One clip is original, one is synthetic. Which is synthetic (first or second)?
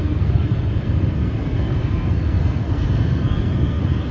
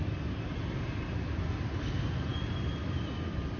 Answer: first